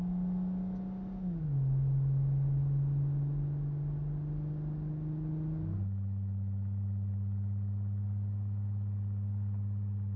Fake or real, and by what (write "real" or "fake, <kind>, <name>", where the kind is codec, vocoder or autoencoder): real